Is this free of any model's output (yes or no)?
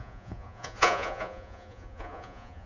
no